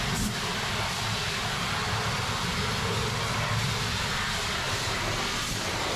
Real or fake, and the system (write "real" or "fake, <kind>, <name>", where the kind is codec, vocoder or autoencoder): real